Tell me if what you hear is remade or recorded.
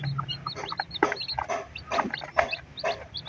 recorded